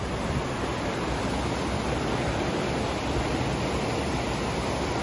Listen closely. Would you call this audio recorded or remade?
recorded